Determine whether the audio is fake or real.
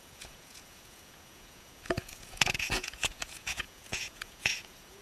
fake